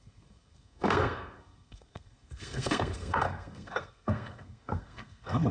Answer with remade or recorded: remade